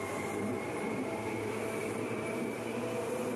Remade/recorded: recorded